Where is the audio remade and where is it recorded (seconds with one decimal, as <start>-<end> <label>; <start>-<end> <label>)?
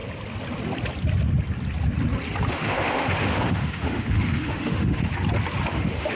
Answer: 0.0-2.5 recorded; 2.5-5.1 remade; 5.1-5.7 recorded; 5.7-6.2 remade